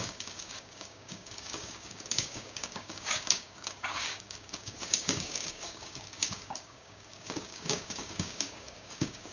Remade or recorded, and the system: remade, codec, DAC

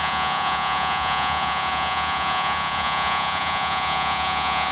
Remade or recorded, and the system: remade, vocoder, Vocos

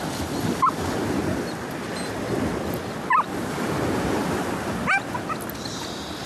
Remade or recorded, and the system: recorded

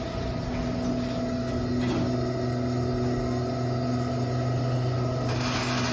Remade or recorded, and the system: recorded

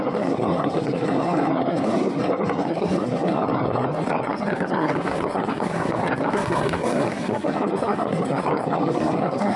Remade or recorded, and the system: remade, codec, SNAC